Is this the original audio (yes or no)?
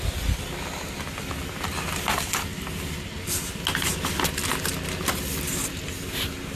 yes